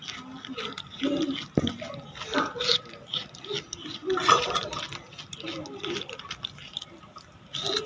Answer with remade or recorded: recorded